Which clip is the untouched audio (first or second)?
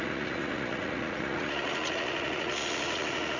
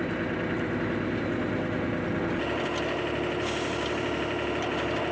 second